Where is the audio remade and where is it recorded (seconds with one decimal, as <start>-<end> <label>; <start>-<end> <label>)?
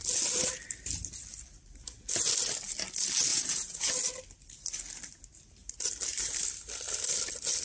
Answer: 0.0-3.3 recorded; 3.3-3.9 remade; 3.9-7.6 recorded